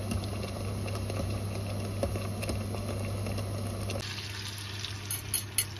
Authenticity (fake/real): real